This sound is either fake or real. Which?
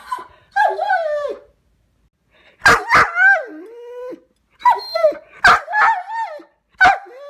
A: real